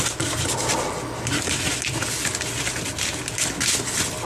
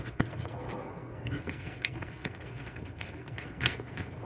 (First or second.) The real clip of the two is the first